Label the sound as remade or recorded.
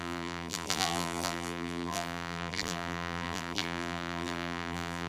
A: remade